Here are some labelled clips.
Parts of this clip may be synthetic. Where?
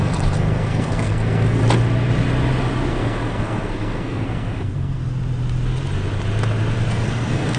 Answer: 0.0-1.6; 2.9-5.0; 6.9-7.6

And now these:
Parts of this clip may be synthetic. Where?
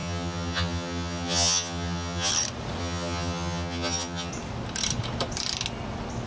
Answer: 0.0-2.3; 2.8-4.3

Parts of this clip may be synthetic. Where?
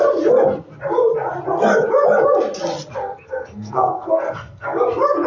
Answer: 3.0-4.8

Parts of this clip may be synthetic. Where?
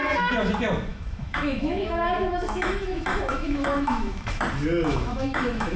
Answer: 0.9-4.4; 4.9-5.8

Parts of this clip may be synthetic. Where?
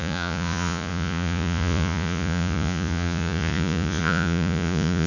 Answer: 0.0-5.1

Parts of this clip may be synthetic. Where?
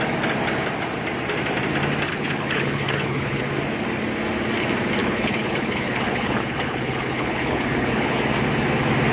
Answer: 2.1-3.4; 5.0-8.2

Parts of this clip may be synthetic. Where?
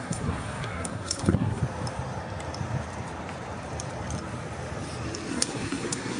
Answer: 0.0-1.6; 5.3-6.2